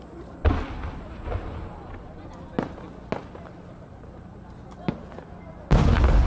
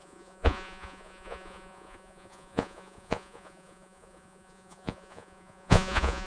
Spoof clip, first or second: second